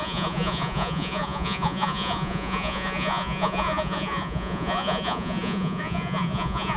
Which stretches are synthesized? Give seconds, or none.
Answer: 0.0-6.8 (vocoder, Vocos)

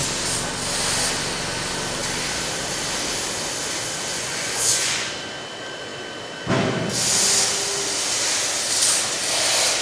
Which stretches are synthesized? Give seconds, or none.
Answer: 4.1-5.1 (vocoder, Vocos)

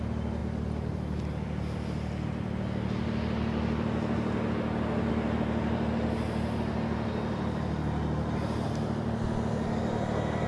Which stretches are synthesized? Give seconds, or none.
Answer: none

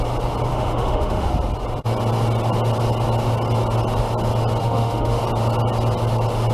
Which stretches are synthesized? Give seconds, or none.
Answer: 0.5-1.3 (autoencoder, DAC-VAE); 4.6-5.2

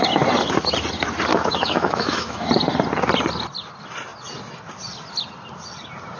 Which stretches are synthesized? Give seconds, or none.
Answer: 1.3-2.5 (autoencoder, DAC-VAE)

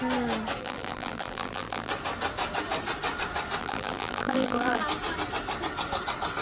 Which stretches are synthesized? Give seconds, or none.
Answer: 0.6-1.9 (vocoder, BigVGAN v2); 3.6-4.8